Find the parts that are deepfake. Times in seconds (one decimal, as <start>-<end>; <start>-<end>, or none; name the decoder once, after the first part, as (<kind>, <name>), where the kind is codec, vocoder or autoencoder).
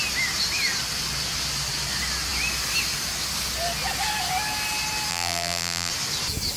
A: 5.1-5.9 (vocoder, BigVGAN v2)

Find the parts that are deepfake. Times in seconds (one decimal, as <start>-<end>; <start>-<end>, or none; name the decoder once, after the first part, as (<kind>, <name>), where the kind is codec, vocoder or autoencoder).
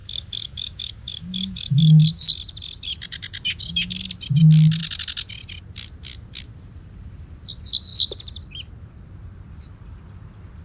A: 0.0-2.0 (codec, DAC)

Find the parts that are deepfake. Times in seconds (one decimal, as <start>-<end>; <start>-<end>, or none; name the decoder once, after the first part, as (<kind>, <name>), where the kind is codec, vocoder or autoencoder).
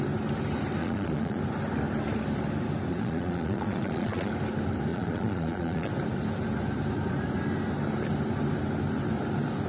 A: 0.8-1.4 (vocoder, Vocos); 2.9-4.3; 4.9-5.9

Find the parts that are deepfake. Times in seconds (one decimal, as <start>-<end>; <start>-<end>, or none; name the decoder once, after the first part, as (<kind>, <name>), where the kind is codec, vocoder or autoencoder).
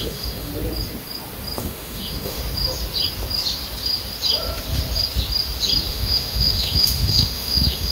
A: 0.0-0.5 (autoencoder, DAC-VAE); 1.6-2.4; 5.9-7.9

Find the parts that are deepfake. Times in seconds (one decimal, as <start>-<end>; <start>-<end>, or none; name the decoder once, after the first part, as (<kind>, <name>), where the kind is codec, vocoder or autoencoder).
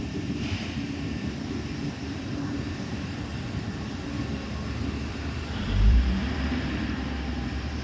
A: 0.0-3.3 (vocoder, BigVGAN v2); 5.4-7.8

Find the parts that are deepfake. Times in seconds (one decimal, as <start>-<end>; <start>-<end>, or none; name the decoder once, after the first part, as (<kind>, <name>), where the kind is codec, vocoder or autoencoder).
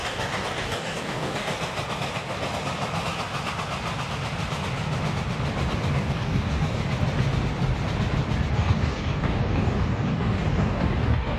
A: 0.0-1.5 (codec, DAC); 5.9-6.8; 8.5-11.4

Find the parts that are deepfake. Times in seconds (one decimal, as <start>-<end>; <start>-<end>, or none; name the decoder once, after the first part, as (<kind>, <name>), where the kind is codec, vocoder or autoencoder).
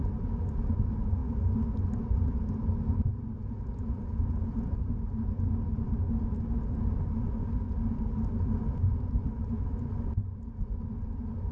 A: 3.4-4.8 (vocoder, Vocos)